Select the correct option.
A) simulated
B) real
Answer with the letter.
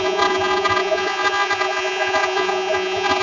A